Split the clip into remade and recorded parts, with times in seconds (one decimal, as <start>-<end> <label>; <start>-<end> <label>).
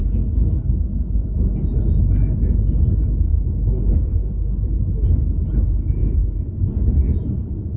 0.0-1.7 remade; 1.7-7.8 recorded